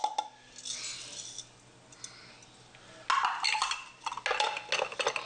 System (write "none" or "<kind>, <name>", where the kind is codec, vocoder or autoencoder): none